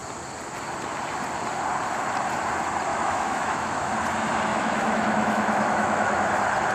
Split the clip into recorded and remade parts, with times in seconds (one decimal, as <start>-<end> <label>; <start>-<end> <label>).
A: 0.0-2.9 recorded; 2.9-3.9 remade; 3.9-4.5 recorded; 4.5-6.3 remade; 6.3-6.7 recorded